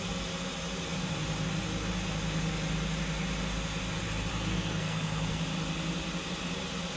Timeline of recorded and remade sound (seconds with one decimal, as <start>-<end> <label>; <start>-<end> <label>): 0.0-4.3 recorded; 4.3-5.4 remade; 5.4-7.0 recorded